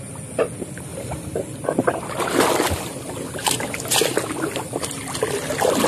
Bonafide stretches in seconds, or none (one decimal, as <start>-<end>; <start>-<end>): 0.0-0.9; 1.8-5.9